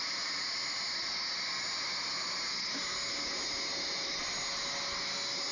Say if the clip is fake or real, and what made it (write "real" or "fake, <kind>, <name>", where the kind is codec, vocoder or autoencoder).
real